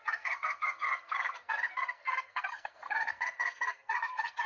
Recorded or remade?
remade